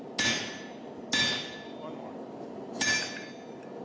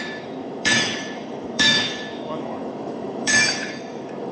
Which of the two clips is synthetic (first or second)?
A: second